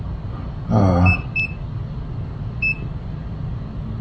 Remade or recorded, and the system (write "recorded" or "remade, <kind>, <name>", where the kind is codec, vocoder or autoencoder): recorded